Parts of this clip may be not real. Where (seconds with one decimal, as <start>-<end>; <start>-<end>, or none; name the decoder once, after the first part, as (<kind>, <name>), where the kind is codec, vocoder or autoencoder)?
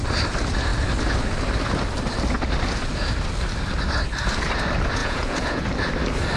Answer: 5.0-5.6 (vocoder, Vocos)